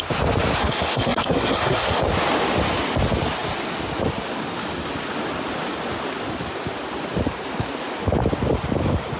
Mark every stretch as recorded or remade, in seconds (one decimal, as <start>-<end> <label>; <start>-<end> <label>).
0.0-0.6 recorded; 0.6-2.0 remade; 2.0-9.2 recorded